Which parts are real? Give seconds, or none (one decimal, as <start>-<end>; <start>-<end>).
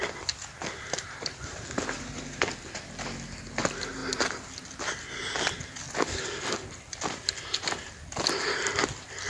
0.0-9.3